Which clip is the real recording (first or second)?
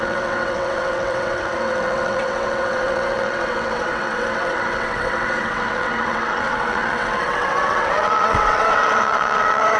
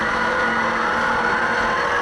second